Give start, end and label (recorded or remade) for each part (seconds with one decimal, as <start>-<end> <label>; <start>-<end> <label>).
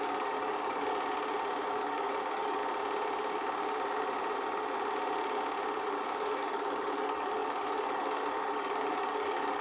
0.0-0.9 remade; 0.9-1.7 recorded; 1.7-2.6 remade; 2.6-5.8 recorded; 5.8-9.6 remade